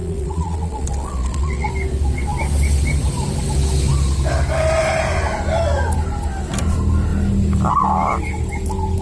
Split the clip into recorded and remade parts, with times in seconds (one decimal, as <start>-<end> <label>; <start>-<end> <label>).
0.0-1.7 remade; 1.7-9.0 recorded